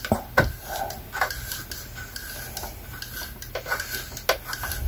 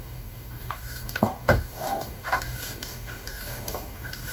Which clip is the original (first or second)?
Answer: first